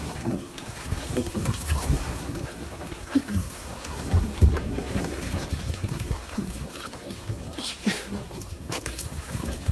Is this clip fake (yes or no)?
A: yes